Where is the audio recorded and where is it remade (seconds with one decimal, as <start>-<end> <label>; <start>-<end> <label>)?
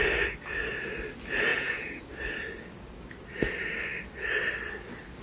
0.0-1.5 recorded; 1.5-2.0 remade; 2.0-5.2 recorded